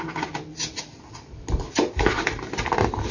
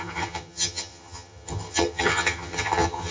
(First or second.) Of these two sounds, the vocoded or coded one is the second